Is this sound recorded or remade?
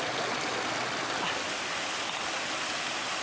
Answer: recorded